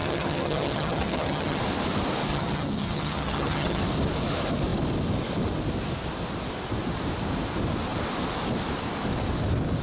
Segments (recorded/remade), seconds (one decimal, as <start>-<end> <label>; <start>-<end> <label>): 0.0-1.6 remade; 1.6-2.3 recorded; 2.3-3.8 remade; 3.8-9.8 recorded